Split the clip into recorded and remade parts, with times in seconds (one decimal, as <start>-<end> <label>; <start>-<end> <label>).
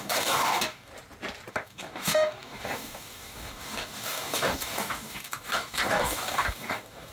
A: 0.0-0.9 remade; 0.9-1.5 recorded; 1.5-7.1 remade